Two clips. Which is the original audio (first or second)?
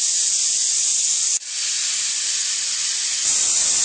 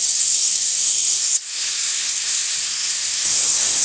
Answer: first